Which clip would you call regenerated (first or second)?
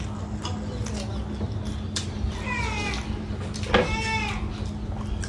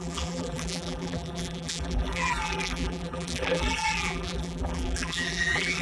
second